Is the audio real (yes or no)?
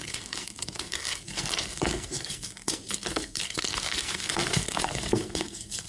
no